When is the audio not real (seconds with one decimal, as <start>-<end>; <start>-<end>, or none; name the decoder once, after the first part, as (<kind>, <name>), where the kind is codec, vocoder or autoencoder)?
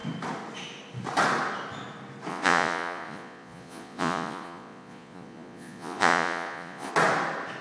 2.3-6.9 (vocoder, Vocos)